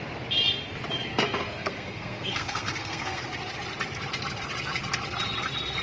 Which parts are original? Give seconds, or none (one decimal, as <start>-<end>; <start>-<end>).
0.0-1.1; 3.2-5.8